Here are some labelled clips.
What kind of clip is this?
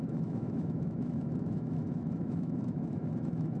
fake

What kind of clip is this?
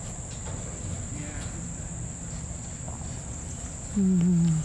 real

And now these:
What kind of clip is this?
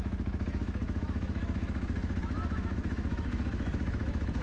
fake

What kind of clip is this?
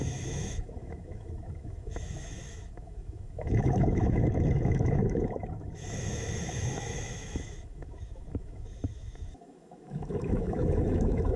fake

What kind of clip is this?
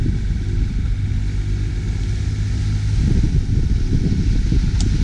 real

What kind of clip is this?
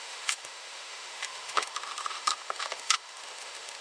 fake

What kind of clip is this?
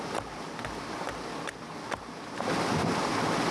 real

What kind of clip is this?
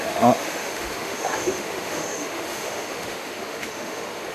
fake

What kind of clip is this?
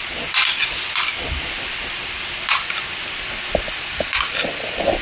real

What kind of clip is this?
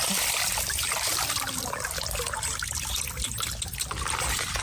real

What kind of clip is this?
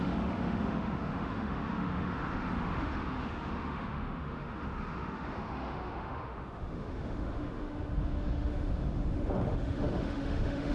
fake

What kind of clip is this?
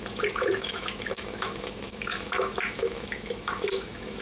fake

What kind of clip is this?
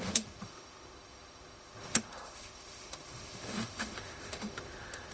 fake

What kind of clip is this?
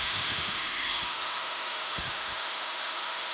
fake